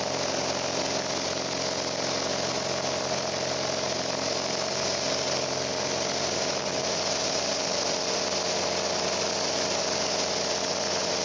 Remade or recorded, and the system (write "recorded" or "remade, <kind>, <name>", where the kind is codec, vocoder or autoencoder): recorded